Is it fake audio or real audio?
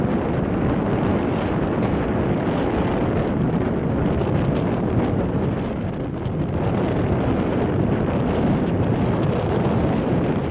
real